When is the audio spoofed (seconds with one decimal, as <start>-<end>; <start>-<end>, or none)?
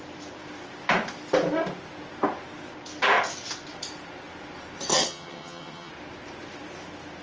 4.9-5.9